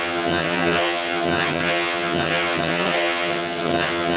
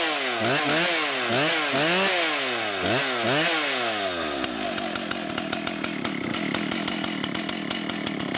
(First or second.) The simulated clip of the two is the first